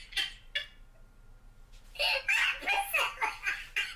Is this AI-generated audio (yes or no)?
no